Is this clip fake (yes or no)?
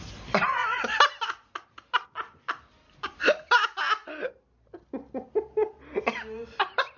no